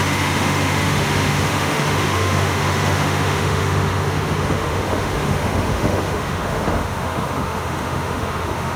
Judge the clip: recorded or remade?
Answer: remade